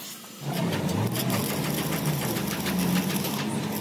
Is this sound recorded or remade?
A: recorded